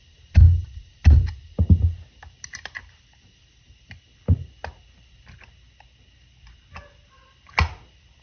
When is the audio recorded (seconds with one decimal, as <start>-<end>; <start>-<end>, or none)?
0.0-8.2

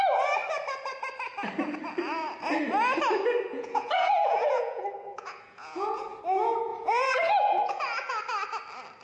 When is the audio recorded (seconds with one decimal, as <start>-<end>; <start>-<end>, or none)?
0.0-3.5; 6.2-6.7; 8.2-9.0

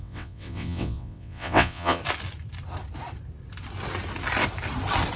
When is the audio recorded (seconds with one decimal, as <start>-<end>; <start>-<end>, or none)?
2.0-5.2